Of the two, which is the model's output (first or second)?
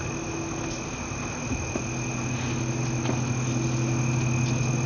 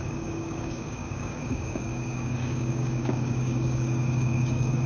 second